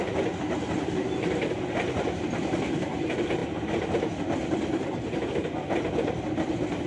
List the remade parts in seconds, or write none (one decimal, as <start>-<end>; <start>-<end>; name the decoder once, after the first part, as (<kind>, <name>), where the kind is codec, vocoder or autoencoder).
none